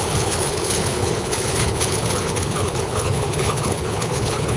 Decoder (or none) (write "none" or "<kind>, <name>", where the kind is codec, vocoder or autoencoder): codec, HILCodec